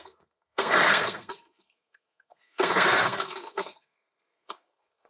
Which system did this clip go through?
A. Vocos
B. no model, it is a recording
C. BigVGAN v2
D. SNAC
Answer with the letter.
D